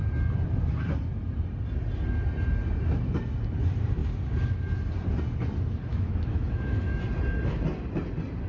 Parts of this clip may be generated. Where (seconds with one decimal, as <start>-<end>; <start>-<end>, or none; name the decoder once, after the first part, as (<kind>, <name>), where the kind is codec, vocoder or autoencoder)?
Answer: 5.9-7.0 (autoencoder, DAC-VAE)

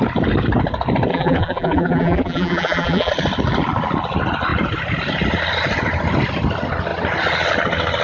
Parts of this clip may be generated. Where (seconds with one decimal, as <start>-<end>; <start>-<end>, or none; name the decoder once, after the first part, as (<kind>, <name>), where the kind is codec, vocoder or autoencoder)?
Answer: 1.1-3.1 (vocoder, BigVGAN v2)

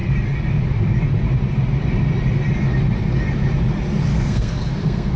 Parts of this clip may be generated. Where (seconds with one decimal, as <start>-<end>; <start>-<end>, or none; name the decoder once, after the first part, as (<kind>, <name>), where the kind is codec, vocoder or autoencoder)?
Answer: 4.1-5.2 (codec, SNAC)

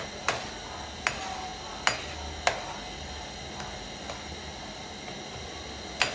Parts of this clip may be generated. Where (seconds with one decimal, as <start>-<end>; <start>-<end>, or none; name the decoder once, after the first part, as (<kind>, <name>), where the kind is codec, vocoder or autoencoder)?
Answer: none

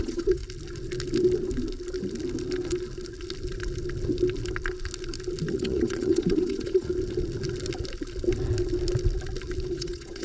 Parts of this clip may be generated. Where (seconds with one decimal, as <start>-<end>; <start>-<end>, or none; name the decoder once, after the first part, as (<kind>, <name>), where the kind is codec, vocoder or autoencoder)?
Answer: 0.0-0.4 (vocoder, Vocos); 5.5-6.9; 9.7-10.2

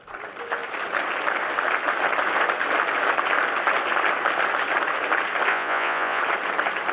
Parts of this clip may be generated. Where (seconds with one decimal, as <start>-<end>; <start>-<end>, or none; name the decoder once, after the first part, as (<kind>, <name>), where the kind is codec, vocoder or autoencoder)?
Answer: 5.5-6.2 (vocoder, Vocos)